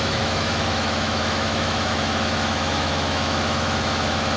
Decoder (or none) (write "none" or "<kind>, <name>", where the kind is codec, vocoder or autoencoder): autoencoder, DAC-VAE